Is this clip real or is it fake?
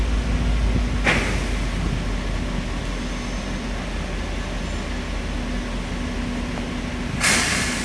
real